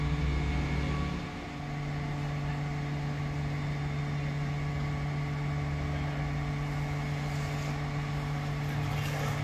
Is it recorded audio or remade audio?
recorded